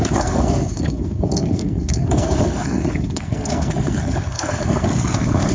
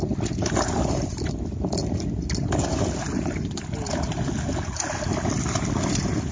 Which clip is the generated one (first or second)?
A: first